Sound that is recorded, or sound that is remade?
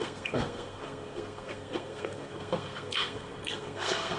remade